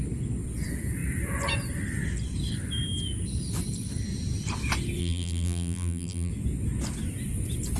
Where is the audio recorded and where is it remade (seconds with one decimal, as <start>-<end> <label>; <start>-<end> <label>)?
0.0-5.0 recorded; 5.0-6.3 remade; 6.3-7.8 recorded